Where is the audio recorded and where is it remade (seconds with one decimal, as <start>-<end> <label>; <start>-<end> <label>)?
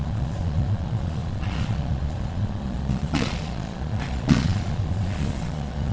0.0-5.9 remade